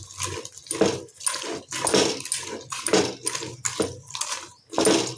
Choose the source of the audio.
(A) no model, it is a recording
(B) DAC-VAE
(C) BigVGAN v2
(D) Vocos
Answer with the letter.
A